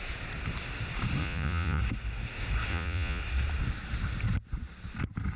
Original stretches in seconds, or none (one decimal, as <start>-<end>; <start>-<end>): 0.0-1.2; 1.8-2.7; 3.2-5.4